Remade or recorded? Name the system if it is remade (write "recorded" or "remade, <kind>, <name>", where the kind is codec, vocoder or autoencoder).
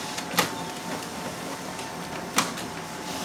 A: remade, vocoder, BigVGAN v2